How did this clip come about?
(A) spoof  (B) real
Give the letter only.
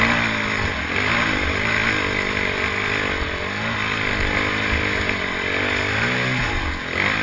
B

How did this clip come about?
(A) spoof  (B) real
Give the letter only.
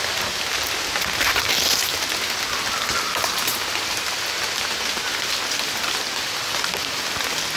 B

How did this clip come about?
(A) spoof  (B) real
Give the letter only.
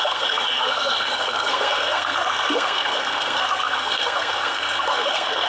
A